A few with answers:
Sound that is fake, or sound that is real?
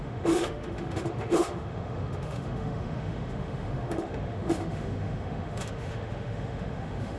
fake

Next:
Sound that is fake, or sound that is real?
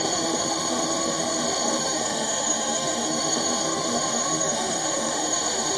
fake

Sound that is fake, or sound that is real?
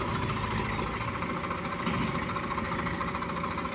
real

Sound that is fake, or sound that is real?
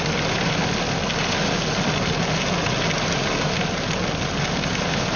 real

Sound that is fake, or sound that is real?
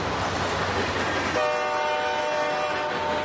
real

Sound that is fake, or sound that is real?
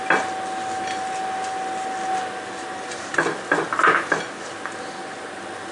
real